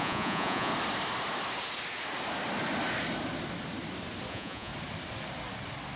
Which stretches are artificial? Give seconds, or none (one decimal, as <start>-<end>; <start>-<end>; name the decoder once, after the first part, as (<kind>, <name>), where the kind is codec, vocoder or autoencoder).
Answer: 0.0-0.7 (vocoder, Vocos); 4.3-4.7